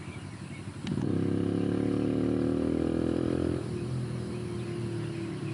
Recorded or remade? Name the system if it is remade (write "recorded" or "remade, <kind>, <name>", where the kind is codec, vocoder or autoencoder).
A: recorded